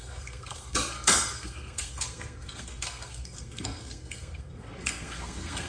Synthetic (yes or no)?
yes